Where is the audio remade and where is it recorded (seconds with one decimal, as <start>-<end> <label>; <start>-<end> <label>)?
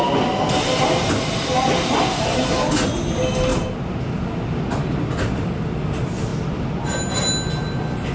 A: 0.0-8.1 recorded